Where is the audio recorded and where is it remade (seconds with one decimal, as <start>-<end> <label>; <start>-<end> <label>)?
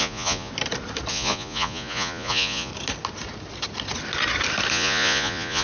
0.0-0.5 remade; 0.5-1.1 recorded; 1.1-2.7 remade; 2.7-4.7 recorded; 4.7-5.6 remade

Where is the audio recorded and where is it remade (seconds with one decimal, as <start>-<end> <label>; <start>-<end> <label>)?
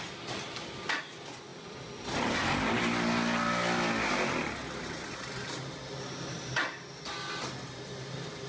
0.0-8.5 recorded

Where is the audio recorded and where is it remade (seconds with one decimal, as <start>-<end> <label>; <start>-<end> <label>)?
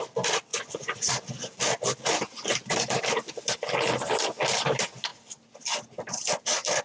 0.0-0.5 recorded; 0.5-1.1 remade; 1.1-6.8 recorded